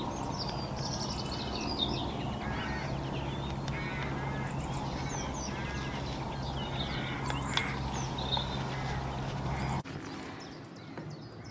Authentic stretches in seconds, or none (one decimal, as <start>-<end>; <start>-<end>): 0.0-11.5